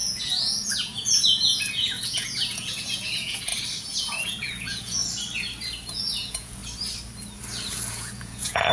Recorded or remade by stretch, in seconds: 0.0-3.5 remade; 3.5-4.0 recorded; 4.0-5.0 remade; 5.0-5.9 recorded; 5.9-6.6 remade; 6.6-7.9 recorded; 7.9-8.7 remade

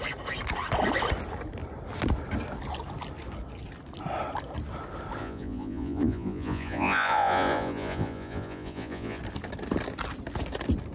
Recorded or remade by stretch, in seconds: 0.0-5.2 recorded; 5.2-9.2 remade; 9.2-10.9 recorded

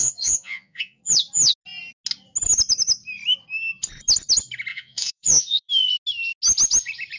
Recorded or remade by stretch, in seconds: 0.0-1.0 remade; 1.0-4.7 recorded; 4.7-5.7 remade; 5.7-7.2 recorded